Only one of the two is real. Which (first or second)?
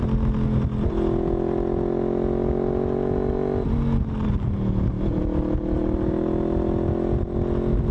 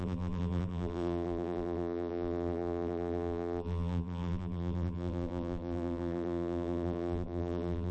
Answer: first